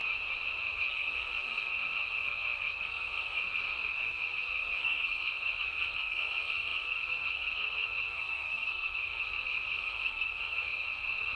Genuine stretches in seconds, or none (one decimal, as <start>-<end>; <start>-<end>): 0.0-0.6